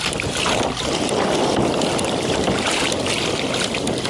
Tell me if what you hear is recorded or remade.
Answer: recorded